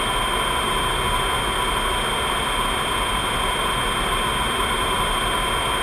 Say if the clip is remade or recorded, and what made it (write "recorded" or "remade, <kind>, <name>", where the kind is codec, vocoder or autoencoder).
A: recorded